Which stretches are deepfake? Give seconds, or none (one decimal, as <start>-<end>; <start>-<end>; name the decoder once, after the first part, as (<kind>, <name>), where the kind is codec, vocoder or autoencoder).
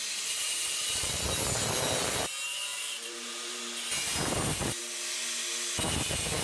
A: 0.4-1.2 (vocoder, BigVGAN v2); 2.7-3.6; 4.1-4.8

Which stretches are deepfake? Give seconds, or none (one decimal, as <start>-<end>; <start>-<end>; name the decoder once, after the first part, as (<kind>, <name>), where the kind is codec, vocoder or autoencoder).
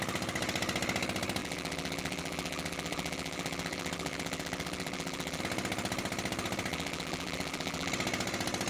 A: 1.4-5.4 (vocoder, BigVGAN v2); 6.7-7.9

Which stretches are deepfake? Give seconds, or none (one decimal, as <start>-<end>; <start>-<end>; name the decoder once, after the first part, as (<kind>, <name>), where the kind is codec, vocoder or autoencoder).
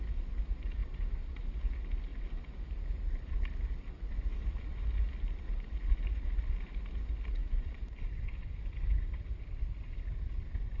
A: 0.8-1.4 (vocoder, BigVGAN v2); 4.3-4.8; 7.4-8.3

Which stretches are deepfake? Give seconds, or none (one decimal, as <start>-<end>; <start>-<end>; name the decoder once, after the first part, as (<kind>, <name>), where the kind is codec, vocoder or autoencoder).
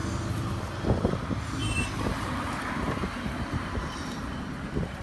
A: 0.6-5.0 (vocoder, BigVGAN v2)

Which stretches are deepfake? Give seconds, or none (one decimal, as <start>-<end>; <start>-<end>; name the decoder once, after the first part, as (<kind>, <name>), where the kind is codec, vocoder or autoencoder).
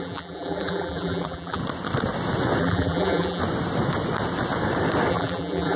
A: 0.0-1.6 (vocoder, BigVGAN v2); 2.6-3.4; 5.1-5.8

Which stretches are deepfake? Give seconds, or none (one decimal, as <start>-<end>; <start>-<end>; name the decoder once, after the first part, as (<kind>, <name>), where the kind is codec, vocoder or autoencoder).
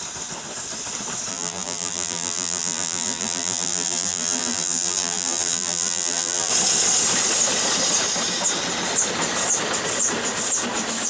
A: 1.3-6.5 (vocoder, BigVGAN v2)